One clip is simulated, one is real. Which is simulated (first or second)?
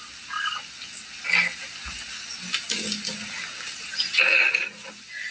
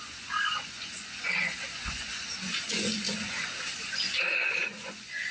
second